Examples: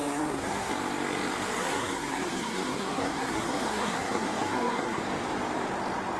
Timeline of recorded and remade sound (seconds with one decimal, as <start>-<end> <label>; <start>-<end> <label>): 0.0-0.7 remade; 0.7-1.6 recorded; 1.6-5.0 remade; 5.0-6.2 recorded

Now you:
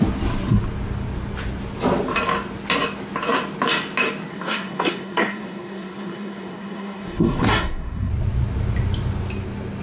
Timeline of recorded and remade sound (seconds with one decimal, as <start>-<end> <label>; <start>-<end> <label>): 0.0-4.3 recorded; 4.3-8.1 remade; 8.1-9.8 recorded

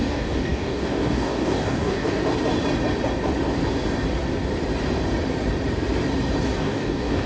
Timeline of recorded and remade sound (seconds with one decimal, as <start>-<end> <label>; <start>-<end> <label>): 0.0-2.2 remade; 2.2-6.6 recorded; 6.6-7.3 remade

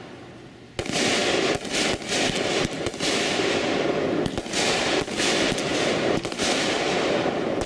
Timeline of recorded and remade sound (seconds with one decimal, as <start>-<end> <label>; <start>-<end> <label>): 0.0-5.7 recorded; 5.7-6.5 remade; 6.5-7.7 recorded

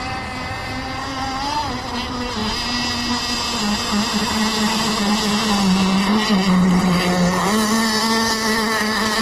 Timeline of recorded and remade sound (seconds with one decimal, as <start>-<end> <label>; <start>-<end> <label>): 0.0-8.0 recorded; 8.0-9.2 remade